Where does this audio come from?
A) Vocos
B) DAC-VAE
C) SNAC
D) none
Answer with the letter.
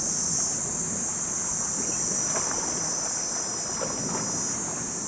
D